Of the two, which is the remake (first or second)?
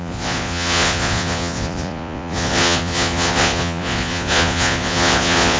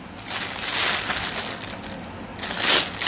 first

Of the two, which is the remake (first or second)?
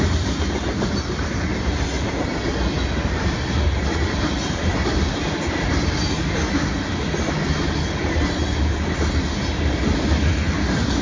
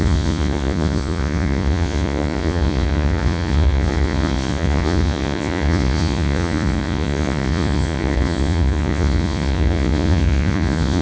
second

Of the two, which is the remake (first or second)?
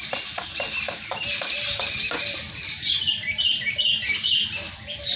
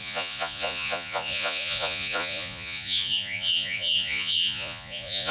second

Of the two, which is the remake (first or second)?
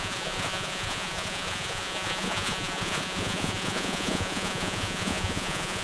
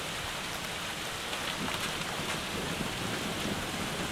first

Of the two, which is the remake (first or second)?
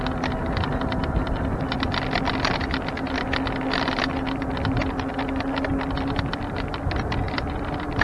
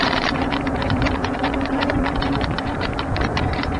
second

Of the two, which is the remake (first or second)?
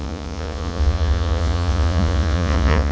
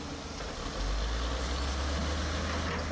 first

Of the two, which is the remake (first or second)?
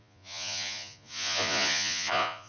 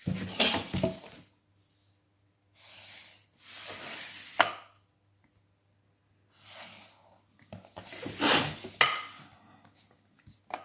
first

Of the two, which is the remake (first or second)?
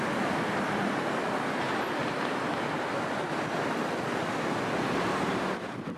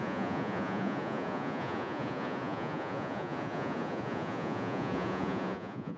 second